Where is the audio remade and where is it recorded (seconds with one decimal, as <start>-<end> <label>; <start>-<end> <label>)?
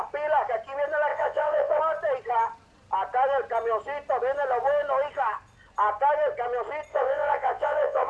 0.0-1.1 recorded; 1.1-1.8 remade; 1.8-6.9 recorded; 6.9-8.1 remade